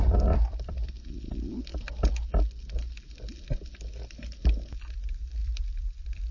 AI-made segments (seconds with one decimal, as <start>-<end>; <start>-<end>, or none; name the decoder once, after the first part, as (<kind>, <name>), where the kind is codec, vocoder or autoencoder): 0.0-0.9 (vocoder, BigVGAN v2); 5.4-6.3